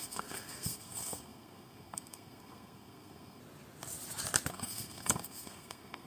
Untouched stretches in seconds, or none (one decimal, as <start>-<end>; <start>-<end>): 3.4-4.5